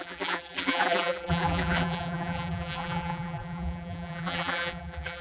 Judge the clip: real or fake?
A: fake